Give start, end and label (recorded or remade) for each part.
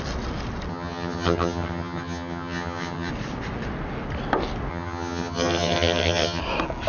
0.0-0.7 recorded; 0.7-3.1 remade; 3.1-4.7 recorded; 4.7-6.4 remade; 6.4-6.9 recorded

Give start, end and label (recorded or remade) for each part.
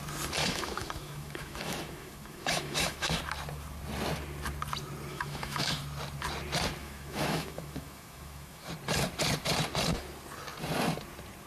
0.0-0.4 recorded; 0.4-3.2 remade; 3.2-5.1 recorded; 5.1-5.8 remade; 5.8-6.8 recorded; 6.8-8.7 remade; 8.7-11.5 recorded